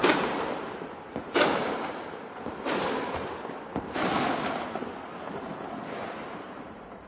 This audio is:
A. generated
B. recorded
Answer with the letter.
B